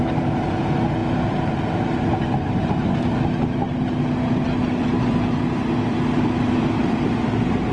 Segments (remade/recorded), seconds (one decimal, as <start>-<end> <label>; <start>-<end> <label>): 0.0-1.0 recorded; 1.0-2.7 remade; 2.7-7.7 recorded